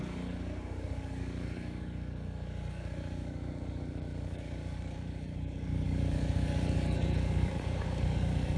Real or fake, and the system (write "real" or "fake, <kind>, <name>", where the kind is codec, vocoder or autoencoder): fake, codec, DAC